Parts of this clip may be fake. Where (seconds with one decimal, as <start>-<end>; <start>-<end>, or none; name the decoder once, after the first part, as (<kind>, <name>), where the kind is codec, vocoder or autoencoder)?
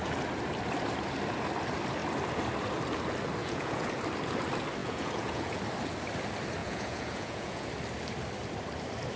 3.4-4.0 (vocoder, Vocos); 4.8-5.6; 6.6-7.7